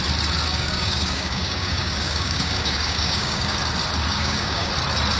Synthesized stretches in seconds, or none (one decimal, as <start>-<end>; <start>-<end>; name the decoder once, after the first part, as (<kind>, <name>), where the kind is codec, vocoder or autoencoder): 0.5-3.6 (codec, DAC); 4.1-4.7

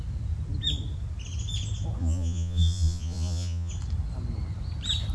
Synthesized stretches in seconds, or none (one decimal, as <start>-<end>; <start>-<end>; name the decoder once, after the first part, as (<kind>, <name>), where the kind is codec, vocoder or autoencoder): 2.0-3.7 (vocoder, Vocos)

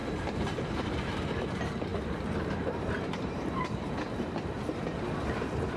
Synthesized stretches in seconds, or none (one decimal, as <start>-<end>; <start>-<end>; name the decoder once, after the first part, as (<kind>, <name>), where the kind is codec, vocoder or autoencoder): 0.0-1.2 (vocoder, BigVGAN v2); 1.9-4.5

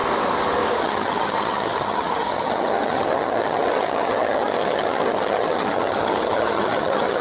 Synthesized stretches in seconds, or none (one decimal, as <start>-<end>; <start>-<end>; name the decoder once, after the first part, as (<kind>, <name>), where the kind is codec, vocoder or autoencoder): 0.8-7.2 (vocoder, HiFi-GAN)